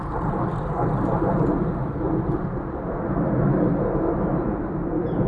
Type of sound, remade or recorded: recorded